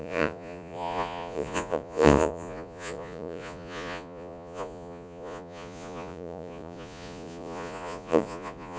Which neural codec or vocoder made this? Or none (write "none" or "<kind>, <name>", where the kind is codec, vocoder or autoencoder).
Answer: vocoder, Vocos